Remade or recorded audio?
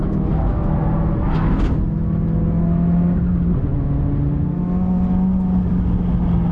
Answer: recorded